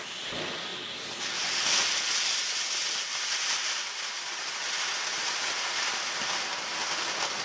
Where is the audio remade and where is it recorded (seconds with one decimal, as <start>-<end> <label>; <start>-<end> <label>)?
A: 0.0-7.4 recorded